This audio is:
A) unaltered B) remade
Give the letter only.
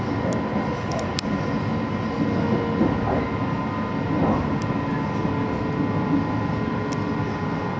A